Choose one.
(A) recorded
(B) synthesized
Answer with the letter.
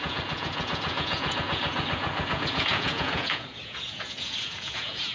B